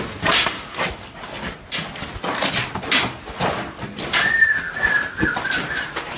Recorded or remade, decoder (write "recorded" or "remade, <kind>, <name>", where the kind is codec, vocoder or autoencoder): recorded